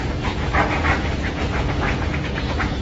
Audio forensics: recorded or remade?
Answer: remade